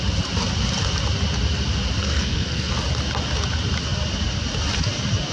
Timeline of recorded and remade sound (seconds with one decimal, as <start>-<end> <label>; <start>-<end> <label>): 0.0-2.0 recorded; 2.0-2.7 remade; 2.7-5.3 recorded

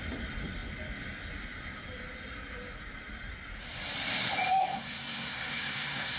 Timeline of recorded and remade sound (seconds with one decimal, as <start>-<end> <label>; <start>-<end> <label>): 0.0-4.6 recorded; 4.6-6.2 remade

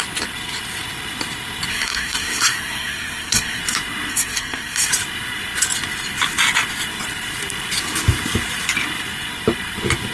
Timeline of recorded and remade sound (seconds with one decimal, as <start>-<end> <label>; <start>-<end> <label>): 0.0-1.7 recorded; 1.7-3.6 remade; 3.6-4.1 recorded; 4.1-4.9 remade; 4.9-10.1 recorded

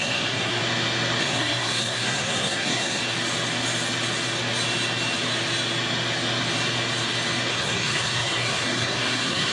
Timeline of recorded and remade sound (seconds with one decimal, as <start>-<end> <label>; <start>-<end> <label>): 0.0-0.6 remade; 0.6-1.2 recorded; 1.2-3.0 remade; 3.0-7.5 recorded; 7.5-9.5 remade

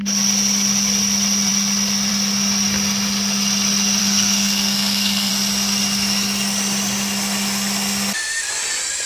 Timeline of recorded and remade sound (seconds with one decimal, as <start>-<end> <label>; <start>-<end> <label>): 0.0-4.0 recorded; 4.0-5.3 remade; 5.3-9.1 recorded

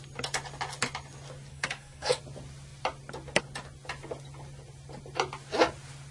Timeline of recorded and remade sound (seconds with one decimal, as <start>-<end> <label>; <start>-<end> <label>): 0.0-1.5 recorded; 1.5-2.2 remade; 2.2-6.1 recorded

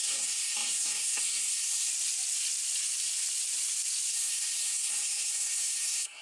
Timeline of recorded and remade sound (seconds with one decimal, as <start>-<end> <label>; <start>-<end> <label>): 0.0-1.9 remade; 1.9-4.1 recorded; 4.1-6.2 remade